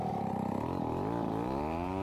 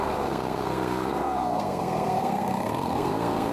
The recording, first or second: first